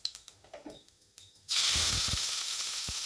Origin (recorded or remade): remade